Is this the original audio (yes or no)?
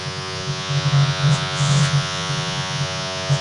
no